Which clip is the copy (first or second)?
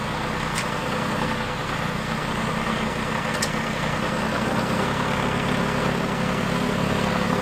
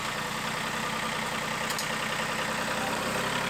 first